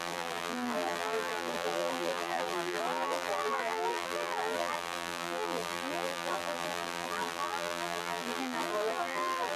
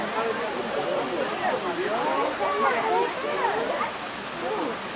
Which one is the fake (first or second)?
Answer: first